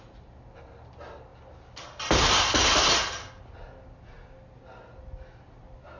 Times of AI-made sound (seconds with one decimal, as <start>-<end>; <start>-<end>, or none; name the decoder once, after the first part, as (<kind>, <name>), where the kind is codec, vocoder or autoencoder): none